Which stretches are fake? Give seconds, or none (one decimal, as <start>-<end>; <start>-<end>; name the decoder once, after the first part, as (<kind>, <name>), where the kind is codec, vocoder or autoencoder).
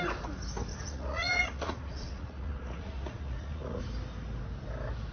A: 0.7-3.8 (vocoder, Vocos)